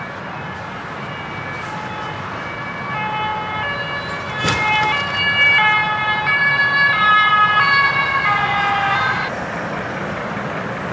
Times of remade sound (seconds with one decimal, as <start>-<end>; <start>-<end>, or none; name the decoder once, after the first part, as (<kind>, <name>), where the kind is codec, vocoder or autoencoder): none